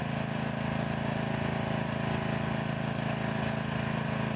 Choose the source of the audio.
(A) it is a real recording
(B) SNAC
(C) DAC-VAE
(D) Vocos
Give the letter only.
A